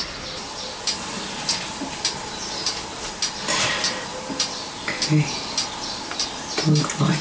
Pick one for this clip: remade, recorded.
recorded